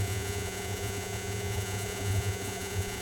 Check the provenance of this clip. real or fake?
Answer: fake